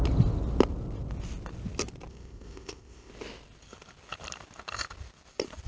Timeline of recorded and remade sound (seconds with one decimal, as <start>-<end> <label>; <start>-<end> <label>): 0.0-2.1 recorded; 2.1-3.1 remade; 3.1-5.7 recorded